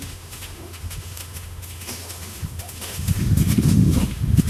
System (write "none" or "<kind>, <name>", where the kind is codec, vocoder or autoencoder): autoencoder, DAC-VAE